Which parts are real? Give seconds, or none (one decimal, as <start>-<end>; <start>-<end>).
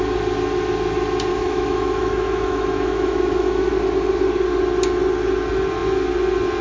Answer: 0.0-1.3; 3.7-6.6